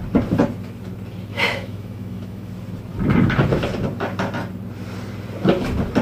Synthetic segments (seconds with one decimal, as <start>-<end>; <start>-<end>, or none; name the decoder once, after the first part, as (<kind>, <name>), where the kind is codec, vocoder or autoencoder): 1.3-2.5 (autoencoder, DAC-VAE)